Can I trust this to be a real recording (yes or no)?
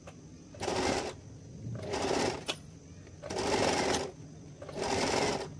yes